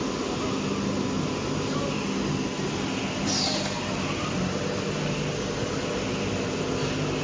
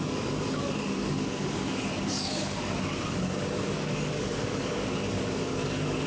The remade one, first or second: second